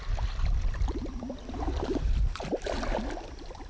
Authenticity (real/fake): real